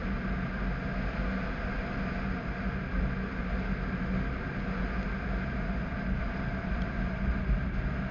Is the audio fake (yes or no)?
no